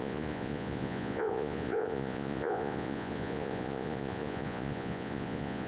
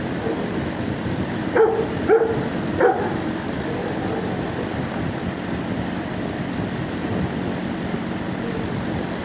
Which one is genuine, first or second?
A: second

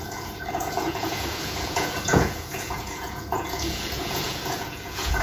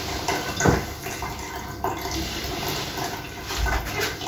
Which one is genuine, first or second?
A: second